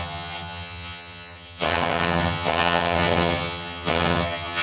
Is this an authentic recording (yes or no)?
no